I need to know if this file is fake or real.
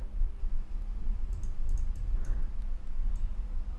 real